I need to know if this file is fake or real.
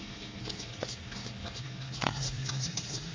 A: fake